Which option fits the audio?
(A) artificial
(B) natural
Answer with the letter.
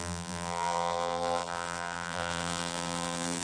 A